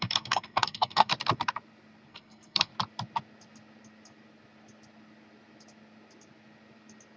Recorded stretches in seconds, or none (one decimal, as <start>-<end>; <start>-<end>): 1.1-2.1; 2.7-7.2